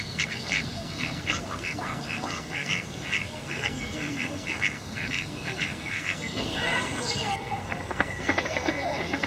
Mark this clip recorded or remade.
remade